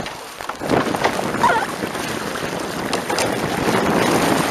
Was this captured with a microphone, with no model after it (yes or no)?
yes